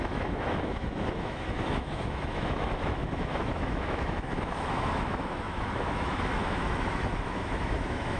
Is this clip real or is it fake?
fake